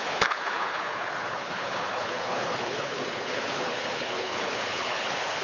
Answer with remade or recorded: remade